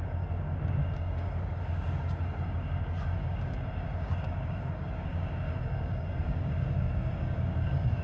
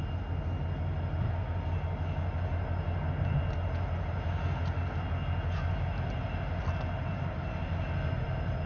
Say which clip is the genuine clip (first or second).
second